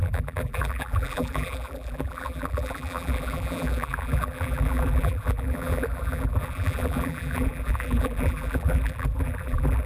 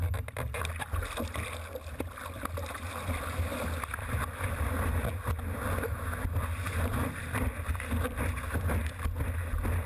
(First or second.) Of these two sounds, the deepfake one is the first